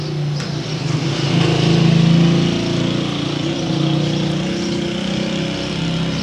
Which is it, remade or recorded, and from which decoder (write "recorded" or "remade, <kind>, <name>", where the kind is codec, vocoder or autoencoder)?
recorded